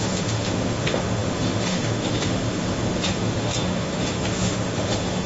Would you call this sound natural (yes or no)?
no